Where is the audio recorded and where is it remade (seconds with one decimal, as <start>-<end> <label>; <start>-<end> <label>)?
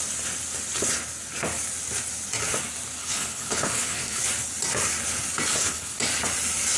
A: 0.0-3.0 recorded; 3.0-4.2 remade; 4.2-5.5 recorded; 5.5-6.0 remade; 6.0-6.8 recorded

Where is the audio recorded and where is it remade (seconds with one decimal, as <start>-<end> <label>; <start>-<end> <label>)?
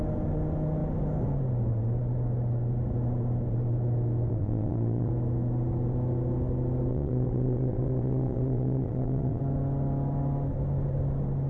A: 0.0-4.3 recorded; 4.3-5.1 remade; 5.1-6.9 recorded; 6.9-9.4 remade; 9.4-11.5 recorded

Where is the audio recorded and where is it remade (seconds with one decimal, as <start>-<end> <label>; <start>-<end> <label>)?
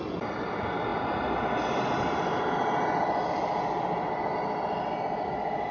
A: 0.0-5.7 recorded